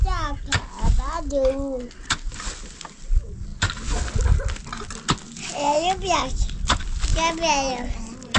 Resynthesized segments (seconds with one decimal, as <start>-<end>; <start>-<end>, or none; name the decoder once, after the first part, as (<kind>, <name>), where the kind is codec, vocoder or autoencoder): none